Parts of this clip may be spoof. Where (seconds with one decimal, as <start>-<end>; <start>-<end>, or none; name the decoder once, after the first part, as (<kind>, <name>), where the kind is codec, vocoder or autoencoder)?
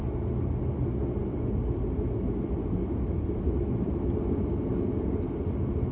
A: 1.2-4.7 (vocoder, BigVGAN v2)